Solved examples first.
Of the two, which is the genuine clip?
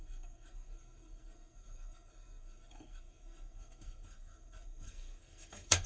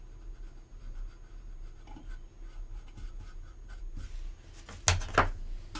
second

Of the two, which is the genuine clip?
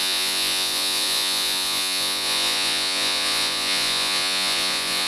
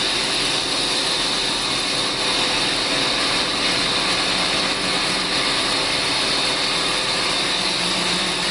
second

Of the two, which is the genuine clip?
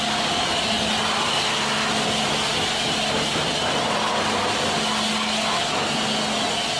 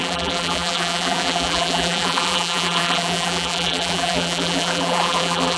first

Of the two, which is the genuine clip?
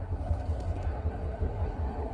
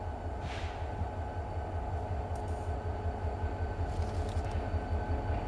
second